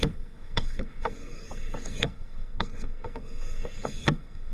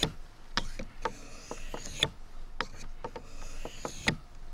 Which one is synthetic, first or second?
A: first